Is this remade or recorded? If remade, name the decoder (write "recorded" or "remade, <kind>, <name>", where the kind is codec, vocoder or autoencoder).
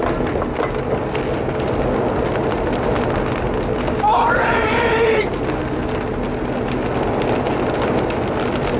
recorded